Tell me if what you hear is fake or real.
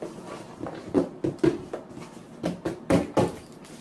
real